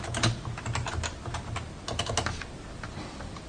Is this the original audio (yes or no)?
yes